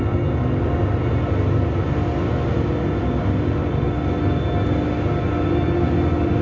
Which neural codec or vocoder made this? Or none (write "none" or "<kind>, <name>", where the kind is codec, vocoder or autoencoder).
none